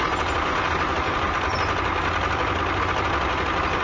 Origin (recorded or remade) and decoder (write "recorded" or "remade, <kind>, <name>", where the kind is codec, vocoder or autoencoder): recorded